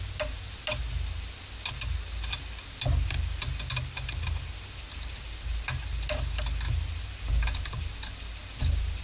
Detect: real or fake real